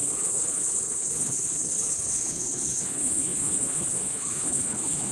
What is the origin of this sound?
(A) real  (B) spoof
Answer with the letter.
B